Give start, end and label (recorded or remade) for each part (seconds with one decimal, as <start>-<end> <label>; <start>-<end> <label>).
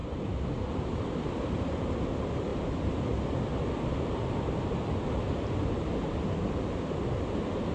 0.0-7.7 recorded